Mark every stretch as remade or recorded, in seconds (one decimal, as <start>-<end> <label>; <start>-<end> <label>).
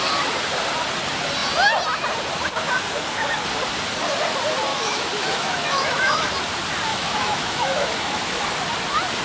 0.0-4.7 recorded; 4.7-6.3 remade; 6.3-6.9 recorded; 6.9-8.5 remade; 8.5-9.2 recorded